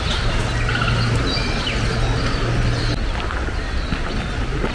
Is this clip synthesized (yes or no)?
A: no